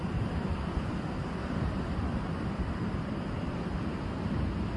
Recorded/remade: recorded